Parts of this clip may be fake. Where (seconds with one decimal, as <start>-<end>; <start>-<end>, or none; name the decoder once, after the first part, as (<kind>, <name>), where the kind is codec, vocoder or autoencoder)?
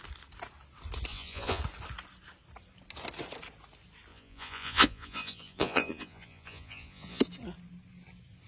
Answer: 1.1-1.6 (vocoder, Vocos); 4.1-7.2